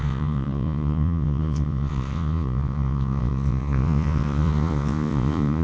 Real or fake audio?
fake